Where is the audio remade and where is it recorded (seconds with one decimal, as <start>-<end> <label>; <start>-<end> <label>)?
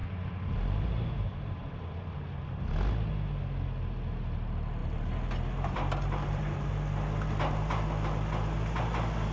0.0-1.7 remade; 1.7-4.8 recorded; 4.8-6.7 remade; 6.7-9.3 recorded